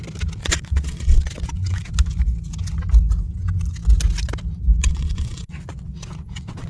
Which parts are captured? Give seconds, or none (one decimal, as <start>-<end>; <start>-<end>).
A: 0.0-0.4; 1.9-4.8